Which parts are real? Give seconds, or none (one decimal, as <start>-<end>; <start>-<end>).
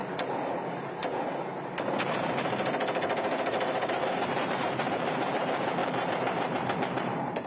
0.0-3.9